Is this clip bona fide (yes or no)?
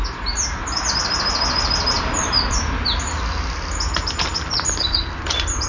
yes